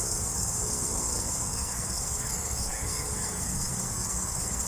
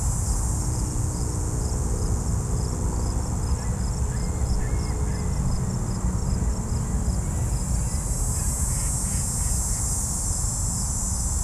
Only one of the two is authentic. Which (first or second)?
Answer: second